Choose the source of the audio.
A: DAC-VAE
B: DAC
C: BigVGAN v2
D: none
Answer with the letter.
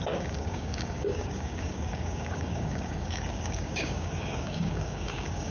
B